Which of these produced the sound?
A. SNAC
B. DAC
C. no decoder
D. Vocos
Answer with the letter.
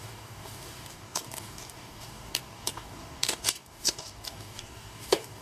B